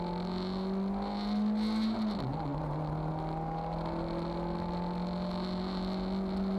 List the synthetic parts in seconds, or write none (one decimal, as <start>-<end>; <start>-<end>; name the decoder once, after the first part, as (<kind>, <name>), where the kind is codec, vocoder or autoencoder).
none